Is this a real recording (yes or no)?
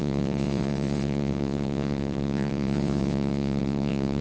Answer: no